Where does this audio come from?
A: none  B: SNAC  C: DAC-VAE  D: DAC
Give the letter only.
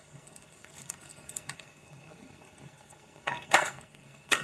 B